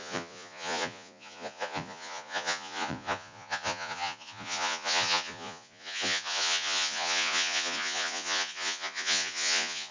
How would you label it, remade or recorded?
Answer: remade